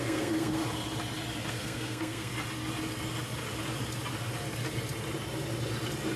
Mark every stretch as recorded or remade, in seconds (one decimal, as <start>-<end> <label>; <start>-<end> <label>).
0.0-0.6 remade; 0.6-1.5 recorded; 1.5-2.3 remade; 2.3-6.2 recorded